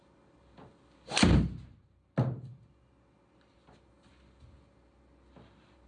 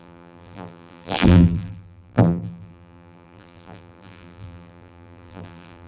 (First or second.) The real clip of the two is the first